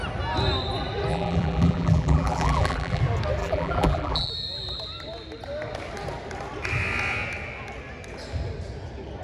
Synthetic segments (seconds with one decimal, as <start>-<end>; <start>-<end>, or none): 1.1-3.0; 3.4-4.3